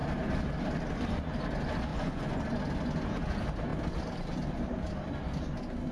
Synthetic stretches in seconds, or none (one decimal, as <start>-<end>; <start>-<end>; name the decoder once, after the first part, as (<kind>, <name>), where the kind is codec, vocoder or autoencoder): 1.9-2.4 (vocoder, Vocos)